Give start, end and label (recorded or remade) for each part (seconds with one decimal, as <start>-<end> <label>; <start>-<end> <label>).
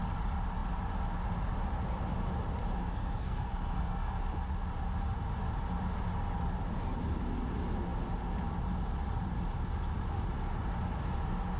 0.0-2.8 recorded; 2.8-4.2 remade; 4.2-11.6 recorded